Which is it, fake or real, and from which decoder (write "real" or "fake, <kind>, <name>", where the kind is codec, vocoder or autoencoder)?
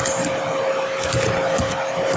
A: real